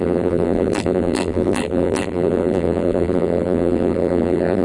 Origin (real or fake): fake